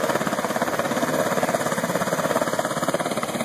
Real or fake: real